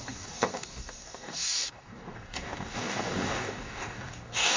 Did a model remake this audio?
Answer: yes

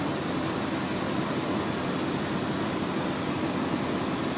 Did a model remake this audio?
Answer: no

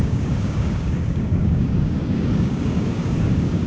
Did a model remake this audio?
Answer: yes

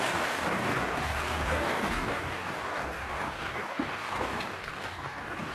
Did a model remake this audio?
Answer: yes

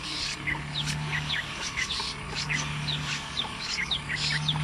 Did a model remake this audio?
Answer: yes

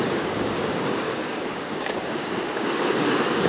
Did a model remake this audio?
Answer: yes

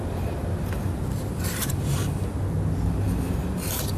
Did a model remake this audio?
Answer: no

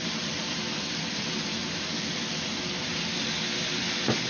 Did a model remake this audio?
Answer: no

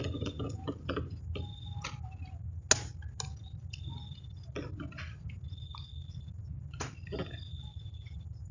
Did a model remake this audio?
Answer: no